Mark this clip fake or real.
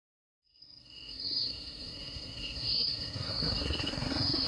fake